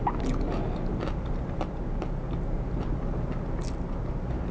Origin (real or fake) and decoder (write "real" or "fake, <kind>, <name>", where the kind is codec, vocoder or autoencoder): real